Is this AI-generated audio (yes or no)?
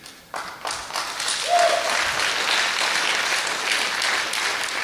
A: no